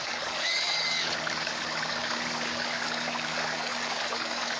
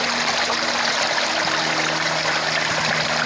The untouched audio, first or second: second